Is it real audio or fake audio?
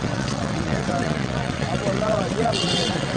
fake